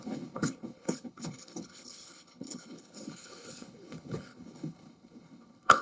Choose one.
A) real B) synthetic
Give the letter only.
B